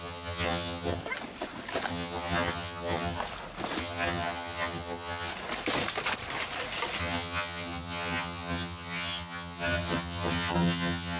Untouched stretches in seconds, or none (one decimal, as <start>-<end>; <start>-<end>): 1.0-1.9; 3.2-3.8; 5.3-7.0